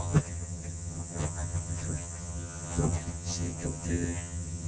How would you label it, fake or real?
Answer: fake